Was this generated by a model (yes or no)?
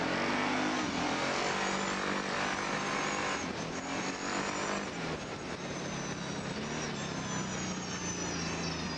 no